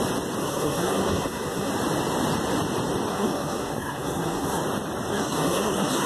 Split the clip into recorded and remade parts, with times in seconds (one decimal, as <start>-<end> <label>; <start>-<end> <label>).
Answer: 0.0-0.4 recorded; 0.4-1.7 remade; 1.7-3.1 recorded; 3.1-4.6 remade; 4.6-5.1 recorded; 5.1-6.1 remade